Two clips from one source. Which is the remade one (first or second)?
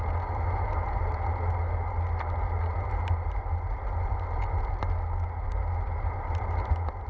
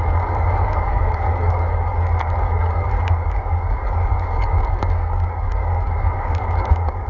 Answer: second